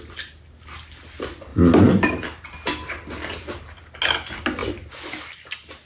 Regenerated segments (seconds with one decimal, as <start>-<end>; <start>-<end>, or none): 1.5-4.0